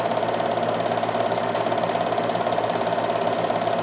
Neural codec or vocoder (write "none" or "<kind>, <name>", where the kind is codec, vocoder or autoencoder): none